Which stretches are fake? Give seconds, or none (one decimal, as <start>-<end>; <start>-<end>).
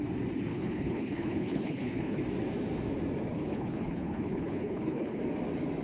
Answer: 0.5-2.2; 3.3-5.2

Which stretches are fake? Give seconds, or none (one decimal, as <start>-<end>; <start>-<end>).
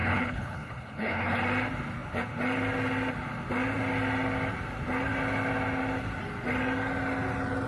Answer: 0.0-1.4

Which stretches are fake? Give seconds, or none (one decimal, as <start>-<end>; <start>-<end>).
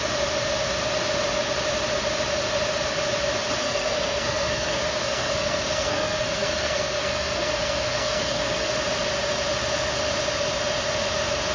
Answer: 3.6-8.7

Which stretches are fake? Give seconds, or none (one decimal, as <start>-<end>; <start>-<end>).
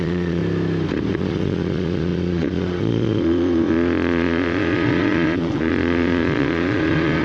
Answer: 0.0-0.4; 1.1-7.2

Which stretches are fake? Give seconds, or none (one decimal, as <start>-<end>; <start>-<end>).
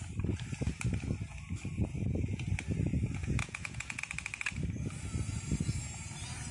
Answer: 3.4-4.0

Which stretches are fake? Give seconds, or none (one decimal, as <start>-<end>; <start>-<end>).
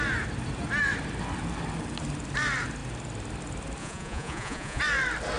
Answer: 3.8-4.8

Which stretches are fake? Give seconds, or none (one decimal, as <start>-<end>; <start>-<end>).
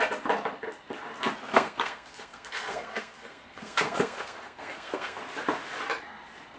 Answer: 1.5-5.2